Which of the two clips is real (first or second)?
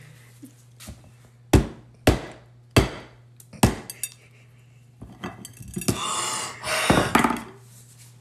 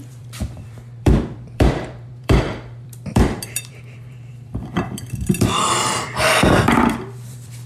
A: first